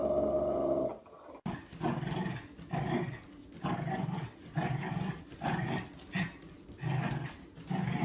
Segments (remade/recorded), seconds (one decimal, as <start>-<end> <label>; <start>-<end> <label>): 0.0-8.0 recorded